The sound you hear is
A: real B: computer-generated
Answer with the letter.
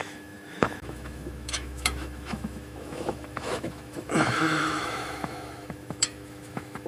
B